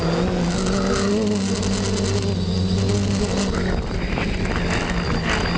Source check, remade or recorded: recorded